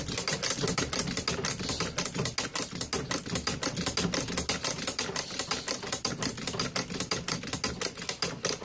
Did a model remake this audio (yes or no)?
no